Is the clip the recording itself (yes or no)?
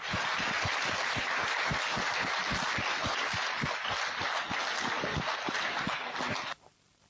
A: yes